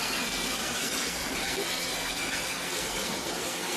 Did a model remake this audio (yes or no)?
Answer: yes